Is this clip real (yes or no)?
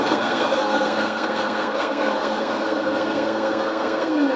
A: no